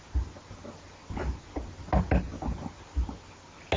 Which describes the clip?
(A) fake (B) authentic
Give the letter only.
B